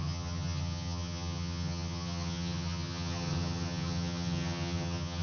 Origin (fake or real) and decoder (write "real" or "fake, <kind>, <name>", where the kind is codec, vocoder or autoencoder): fake, vocoder, HiFi-GAN